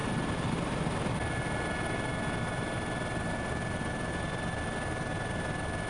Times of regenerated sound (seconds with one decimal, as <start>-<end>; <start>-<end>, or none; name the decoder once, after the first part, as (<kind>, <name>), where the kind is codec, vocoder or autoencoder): none